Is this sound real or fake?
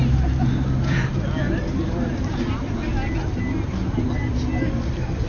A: real